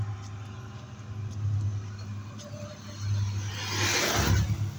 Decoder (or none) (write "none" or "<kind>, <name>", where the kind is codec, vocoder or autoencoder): none